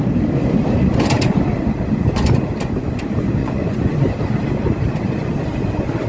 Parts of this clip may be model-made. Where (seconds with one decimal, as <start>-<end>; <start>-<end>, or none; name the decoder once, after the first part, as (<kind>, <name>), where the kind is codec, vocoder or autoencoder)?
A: 3.4-4.0 (vocoder, Vocos)